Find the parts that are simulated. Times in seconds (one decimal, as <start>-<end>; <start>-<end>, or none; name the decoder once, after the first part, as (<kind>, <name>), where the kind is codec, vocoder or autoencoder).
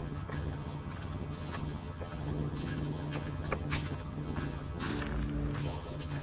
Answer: 0.0-4.9 (vocoder, HiFi-GAN); 5.6-6.2